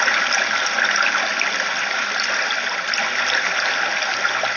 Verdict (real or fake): real